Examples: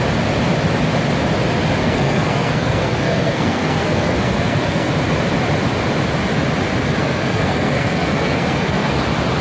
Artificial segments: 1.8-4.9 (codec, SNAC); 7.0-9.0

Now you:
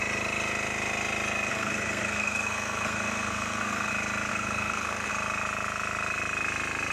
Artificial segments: 1.5-3.9 (codec, SNAC); 4.3-5.1

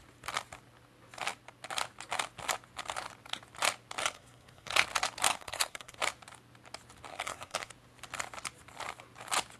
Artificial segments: 4.0-4.7 (codec, SNAC); 5.3-6.0; 7.1-7.7

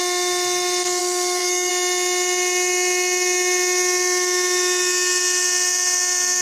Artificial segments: 1.0-1.7 (codec, SNAC)

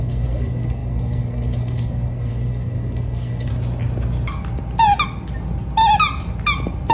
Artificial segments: 0.0-3.5 (codec, SNAC)

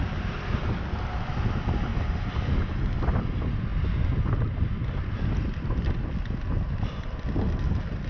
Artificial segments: none